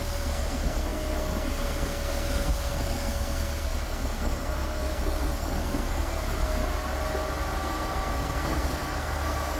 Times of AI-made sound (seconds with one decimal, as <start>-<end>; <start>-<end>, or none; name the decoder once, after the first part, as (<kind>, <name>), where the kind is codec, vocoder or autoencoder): 0.0-6.6 (codec, SNAC); 7.6-9.6